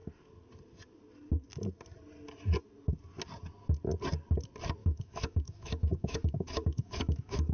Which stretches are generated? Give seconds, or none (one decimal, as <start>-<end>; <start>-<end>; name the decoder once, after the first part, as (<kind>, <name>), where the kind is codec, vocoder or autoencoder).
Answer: 4.8-7.5 (autoencoder, DAC-VAE)